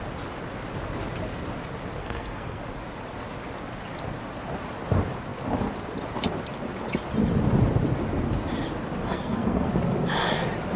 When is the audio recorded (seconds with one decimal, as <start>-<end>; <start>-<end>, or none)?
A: 0.0-2.0; 2.6-9.0; 9.7-10.8